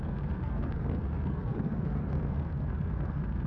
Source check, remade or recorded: remade